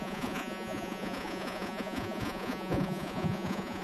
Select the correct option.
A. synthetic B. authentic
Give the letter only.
A